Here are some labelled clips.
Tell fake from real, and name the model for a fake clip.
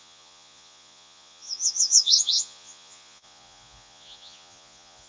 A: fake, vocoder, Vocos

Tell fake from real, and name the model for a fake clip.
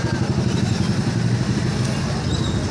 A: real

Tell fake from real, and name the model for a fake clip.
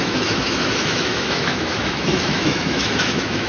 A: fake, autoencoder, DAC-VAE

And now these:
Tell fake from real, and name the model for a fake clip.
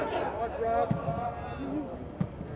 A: real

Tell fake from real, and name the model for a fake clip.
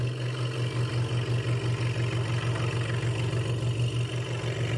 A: real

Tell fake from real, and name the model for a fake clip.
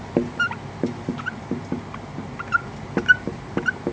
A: real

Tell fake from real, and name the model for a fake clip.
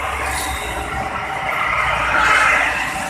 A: real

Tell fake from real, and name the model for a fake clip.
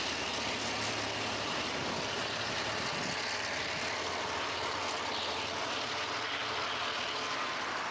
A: real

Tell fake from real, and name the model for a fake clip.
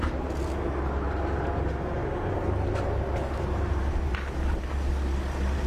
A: real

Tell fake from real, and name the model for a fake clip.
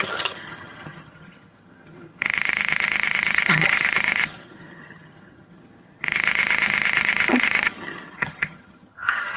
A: fake, vocoder, HiFi-GAN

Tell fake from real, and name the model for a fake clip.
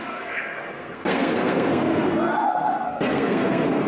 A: fake, codec, SNAC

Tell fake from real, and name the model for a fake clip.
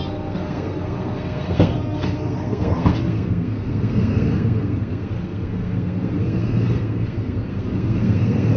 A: fake, codec, SNAC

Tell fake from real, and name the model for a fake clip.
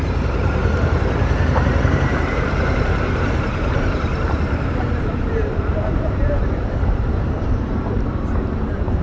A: fake, vocoder, BigVGAN v2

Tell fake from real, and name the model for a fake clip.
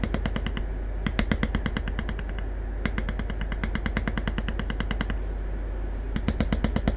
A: real